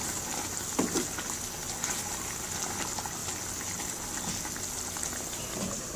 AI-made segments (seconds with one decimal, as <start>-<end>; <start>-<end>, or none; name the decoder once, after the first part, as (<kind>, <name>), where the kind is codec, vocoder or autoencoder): 2.4-3.2 (vocoder, BigVGAN v2); 5.6-6.0